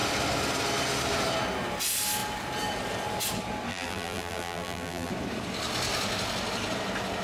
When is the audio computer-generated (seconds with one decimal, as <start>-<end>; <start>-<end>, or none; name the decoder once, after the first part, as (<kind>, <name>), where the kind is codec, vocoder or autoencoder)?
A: 3.7-5.1 (vocoder, BigVGAN v2)